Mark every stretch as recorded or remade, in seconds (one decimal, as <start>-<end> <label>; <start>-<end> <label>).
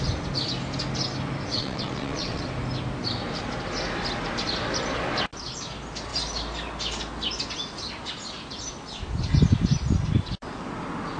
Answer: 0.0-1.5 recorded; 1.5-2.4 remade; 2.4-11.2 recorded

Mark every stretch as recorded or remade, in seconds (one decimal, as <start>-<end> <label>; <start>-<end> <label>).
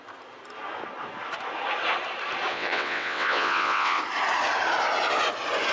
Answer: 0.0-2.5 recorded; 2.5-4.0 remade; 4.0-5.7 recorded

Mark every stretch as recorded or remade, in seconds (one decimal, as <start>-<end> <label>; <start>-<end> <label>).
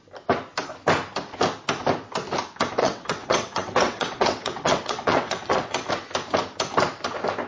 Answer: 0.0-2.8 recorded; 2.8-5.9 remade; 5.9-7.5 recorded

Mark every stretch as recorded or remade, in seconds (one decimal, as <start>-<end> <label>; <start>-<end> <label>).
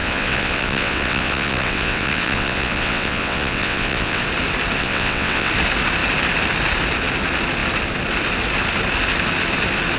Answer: 0.0-4.2 remade; 4.2-4.8 recorded; 4.8-5.5 remade; 5.5-10.0 recorded